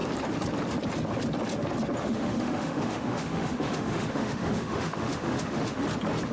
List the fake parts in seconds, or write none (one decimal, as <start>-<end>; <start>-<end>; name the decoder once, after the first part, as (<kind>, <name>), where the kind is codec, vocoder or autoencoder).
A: 2.0-5.8 (autoencoder, DAC-VAE)

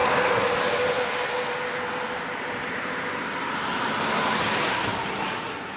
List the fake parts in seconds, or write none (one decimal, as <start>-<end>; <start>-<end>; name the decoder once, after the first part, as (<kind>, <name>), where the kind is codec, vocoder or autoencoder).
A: none

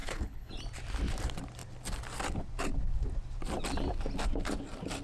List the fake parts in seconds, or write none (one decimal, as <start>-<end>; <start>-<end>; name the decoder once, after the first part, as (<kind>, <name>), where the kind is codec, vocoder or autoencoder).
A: 0.0-0.5 (codec, HILCodec)